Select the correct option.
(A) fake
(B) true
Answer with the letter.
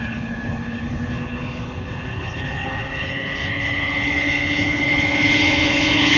A